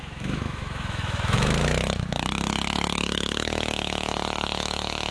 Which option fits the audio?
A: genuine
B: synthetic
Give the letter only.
B